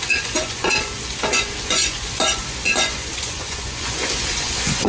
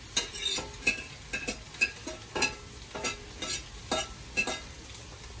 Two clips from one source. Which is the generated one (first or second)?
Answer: first